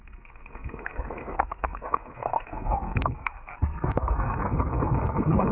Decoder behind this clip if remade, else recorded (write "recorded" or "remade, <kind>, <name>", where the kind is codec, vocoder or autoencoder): remade, codec, SNAC